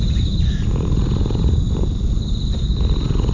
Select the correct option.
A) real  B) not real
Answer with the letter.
A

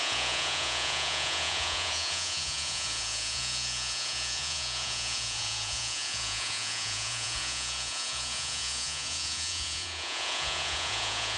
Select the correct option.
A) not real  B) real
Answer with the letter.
A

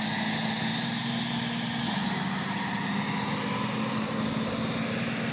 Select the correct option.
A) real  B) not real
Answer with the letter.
A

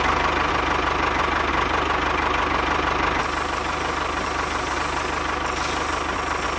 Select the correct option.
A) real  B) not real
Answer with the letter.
A